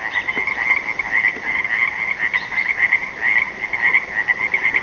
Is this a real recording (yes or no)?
yes